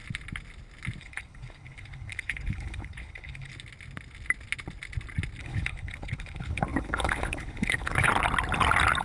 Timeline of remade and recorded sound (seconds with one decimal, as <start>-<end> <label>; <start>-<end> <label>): 0.0-1.0 recorded; 1.0-3.5 remade; 3.5-5.4 recorded; 5.4-8.1 remade; 8.1-9.0 recorded